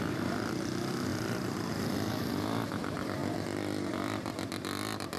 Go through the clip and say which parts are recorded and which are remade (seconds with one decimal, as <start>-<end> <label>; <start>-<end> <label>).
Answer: 0.0-3.2 remade; 3.2-3.9 recorded; 3.9-5.2 remade